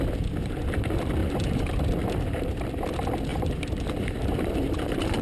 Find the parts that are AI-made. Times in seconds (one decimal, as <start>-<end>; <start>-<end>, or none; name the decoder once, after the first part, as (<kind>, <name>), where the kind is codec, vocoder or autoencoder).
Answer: 1.2-2.7 (vocoder, BigVGAN v2); 3.3-5.2